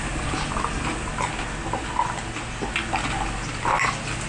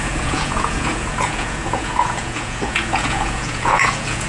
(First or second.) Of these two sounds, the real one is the first